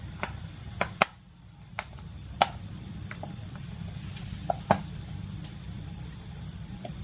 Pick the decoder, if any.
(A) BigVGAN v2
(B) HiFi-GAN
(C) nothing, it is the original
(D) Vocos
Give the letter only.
A